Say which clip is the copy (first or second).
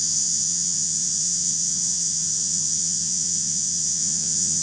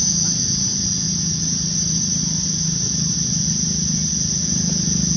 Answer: first